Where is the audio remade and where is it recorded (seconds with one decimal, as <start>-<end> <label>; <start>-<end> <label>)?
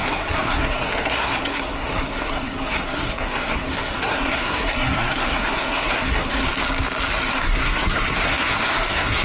0.0-6.4 remade; 6.4-7.3 recorded; 7.3-9.2 remade